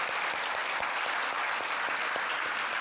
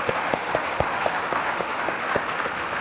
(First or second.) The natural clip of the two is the first